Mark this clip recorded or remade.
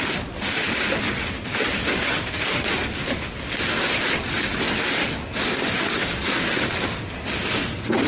recorded